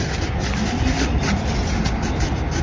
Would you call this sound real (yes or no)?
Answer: yes